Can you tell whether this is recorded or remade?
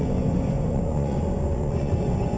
remade